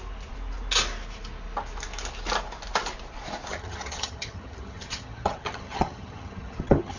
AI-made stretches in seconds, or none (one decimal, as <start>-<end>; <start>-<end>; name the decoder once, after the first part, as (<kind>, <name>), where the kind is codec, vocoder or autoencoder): 3.5-7.0 (vocoder, HiFi-GAN)